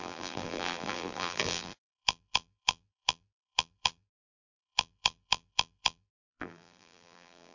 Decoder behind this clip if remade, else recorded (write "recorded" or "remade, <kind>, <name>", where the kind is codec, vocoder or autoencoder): remade, vocoder, BigVGAN v2